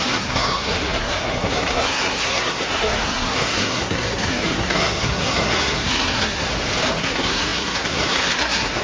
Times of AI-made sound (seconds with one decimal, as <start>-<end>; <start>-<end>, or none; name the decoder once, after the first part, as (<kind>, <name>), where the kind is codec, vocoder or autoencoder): 0.0-6.5 (codec, SNAC); 7.0-8.8